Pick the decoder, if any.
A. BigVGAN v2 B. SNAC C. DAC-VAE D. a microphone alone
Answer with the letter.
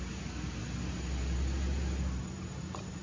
D